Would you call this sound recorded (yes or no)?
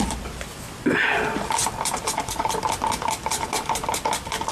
no